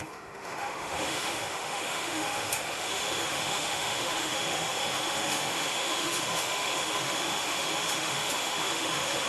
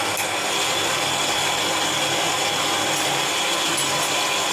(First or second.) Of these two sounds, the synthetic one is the first